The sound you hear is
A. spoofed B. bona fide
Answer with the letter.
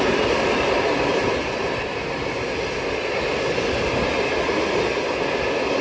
B